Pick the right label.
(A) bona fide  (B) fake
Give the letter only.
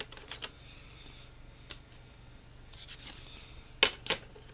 A